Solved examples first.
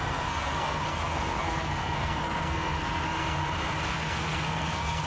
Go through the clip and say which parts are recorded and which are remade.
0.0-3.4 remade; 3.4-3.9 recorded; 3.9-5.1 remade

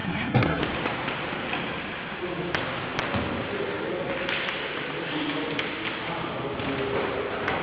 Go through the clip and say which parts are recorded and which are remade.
0.0-0.6 remade; 0.6-7.6 recorded

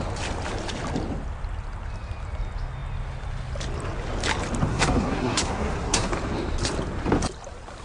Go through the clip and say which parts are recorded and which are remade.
0.0-4.7 recorded; 4.7-6.1 remade; 6.1-7.8 recorded

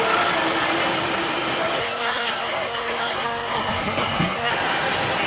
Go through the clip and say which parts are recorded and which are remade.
0.0-1.8 recorded; 1.8-4.5 remade; 4.5-5.3 recorded

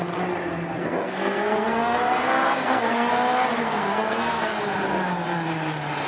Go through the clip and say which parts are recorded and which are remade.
0.0-0.8 recorded; 0.8-3.1 remade; 3.1-3.6 recorded; 3.6-4.6 remade; 4.6-6.1 recorded

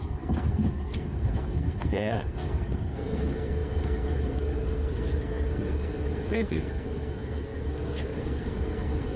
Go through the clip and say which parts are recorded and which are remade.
0.0-9.2 remade

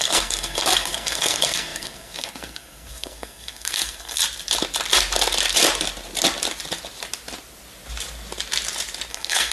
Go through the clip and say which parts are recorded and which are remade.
0.0-4.2 remade; 4.2-9.1 recorded; 9.1-9.5 remade

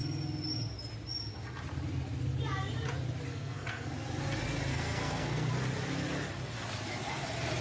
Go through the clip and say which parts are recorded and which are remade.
0.0-3.3 recorded; 3.3-3.9 remade; 3.9-4.7 recorded; 4.7-5.5 remade; 5.5-7.6 recorded